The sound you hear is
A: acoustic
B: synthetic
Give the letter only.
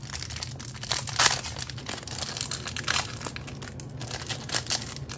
A